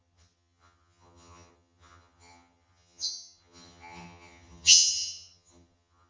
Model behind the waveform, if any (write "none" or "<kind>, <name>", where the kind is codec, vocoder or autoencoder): vocoder, HiFi-GAN